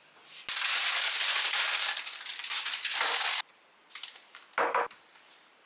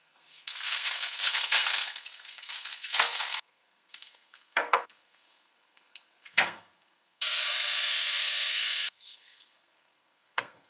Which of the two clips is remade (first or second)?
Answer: second